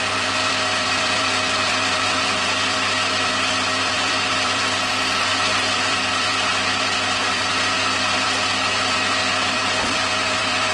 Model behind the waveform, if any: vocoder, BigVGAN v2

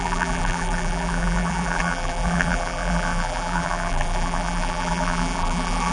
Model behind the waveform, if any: vocoder, BigVGAN v2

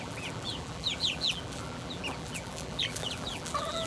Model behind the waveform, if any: vocoder, BigVGAN v2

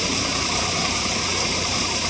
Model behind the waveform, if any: vocoder, BigVGAN v2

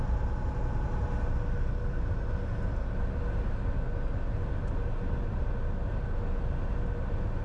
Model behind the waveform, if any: none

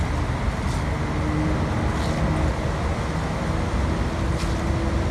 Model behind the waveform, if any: none